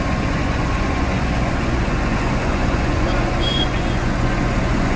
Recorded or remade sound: remade